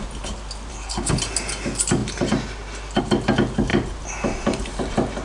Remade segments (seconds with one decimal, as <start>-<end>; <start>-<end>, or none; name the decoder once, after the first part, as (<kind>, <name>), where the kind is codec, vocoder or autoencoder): 0.7-1.2 (codec, HILCodec)